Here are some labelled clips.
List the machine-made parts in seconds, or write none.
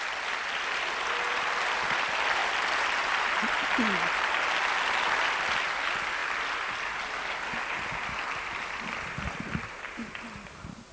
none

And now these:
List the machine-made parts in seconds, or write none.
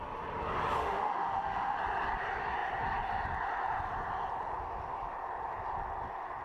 0.8-1.8 (autoencoder, DAC-VAE)